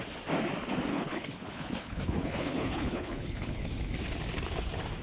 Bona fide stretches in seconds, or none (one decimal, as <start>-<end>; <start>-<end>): 0.0-0.9; 3.7-5.0